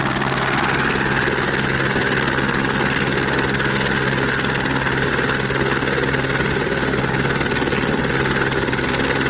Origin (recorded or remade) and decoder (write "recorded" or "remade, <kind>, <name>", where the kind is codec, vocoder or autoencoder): recorded